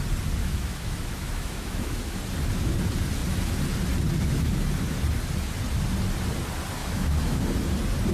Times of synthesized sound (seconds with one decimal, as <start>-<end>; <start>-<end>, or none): 0.4-2.2; 6.8-7.4